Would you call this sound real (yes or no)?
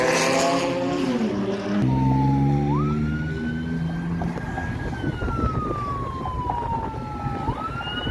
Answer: yes